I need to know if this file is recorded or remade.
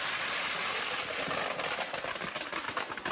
recorded